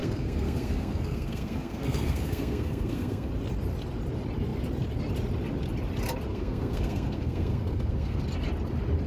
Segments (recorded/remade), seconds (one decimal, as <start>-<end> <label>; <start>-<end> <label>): 0.0-3.3 remade; 3.3-6.3 recorded; 6.3-8.2 remade; 8.2-9.1 recorded